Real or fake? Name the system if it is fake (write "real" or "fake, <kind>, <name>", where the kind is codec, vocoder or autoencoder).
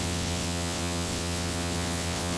fake, vocoder, WaveNeXt